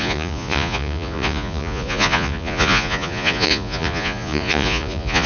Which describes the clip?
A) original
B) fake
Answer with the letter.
B